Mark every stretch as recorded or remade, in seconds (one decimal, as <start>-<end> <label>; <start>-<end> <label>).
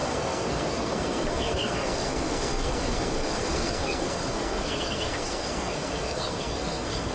0.0-7.1 remade